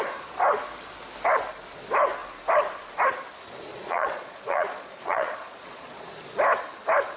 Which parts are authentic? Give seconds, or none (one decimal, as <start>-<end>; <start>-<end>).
0.0-3.7; 6.1-7.2